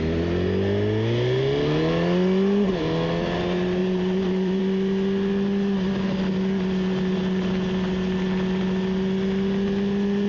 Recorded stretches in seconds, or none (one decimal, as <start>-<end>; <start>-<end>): 0.0-3.8; 4.6-10.3